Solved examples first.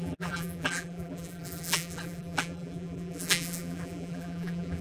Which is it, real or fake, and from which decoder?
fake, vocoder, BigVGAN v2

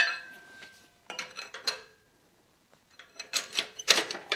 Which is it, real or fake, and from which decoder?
fake, vocoder, BigVGAN v2